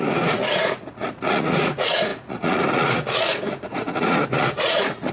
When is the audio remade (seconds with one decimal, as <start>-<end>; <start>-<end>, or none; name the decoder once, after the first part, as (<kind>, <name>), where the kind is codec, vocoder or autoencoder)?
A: 0.0-5.1 (vocoder, Vocos)